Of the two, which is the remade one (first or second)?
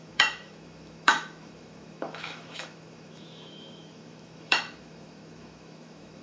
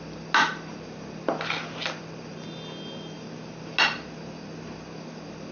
first